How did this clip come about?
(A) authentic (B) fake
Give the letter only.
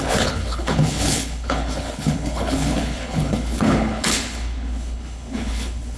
B